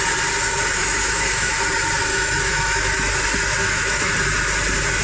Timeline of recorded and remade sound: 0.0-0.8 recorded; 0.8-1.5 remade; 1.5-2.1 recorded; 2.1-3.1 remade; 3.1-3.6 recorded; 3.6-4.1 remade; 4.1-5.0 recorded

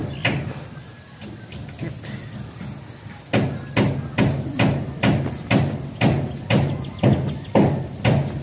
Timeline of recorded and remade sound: 0.0-8.4 recorded

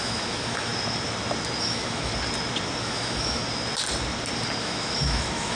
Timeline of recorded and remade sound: 0.0-0.7 remade; 0.7-1.6 recorded; 1.6-2.1 remade; 2.1-2.8 recorded; 2.8-3.4 remade; 3.4-4.6 recorded; 4.6-5.5 remade

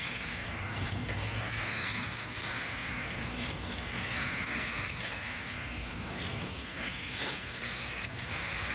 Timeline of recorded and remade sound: 0.0-8.7 remade

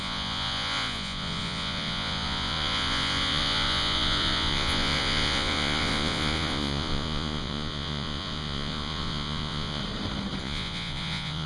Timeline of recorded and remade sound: 0.0-9.8 remade; 9.8-10.4 recorded; 10.4-11.5 remade

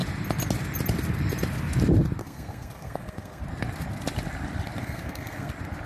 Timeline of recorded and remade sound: 0.0-2.2 recorded; 2.2-3.4 remade; 3.4-4.8 recorded; 4.8-5.5 remade; 5.5-5.9 recorded

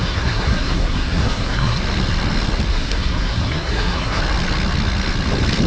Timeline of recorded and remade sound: 0.0-1.8 remade; 1.8-2.7 recorded; 2.7-4.2 remade; 4.2-5.7 recorded

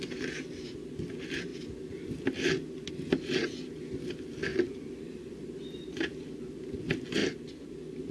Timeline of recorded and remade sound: 0.0-1.5 recorded; 1.5-2.9 remade; 2.9-4.5 recorded; 4.5-6.6 remade; 6.6-8.1 recorded